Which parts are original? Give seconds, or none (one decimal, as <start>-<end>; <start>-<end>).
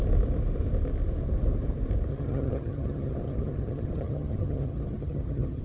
0.0-2.1